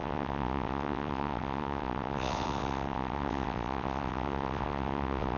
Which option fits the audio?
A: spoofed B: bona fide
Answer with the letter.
A